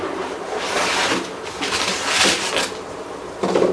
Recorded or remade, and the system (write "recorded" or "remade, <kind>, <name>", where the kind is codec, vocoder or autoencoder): recorded